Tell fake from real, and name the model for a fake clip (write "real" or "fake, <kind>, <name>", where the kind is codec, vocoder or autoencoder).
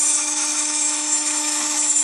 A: fake, autoencoder, DAC-VAE